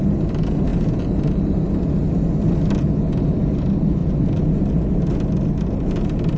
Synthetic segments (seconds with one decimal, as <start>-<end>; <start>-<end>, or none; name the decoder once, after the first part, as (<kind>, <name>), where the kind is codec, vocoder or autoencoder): none